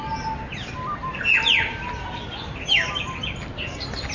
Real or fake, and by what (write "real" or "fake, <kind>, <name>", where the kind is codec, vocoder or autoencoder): real